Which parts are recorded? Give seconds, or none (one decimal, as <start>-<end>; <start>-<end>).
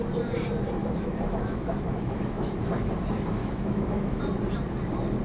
0.0-0.8; 2.5-3.4; 4.2-5.2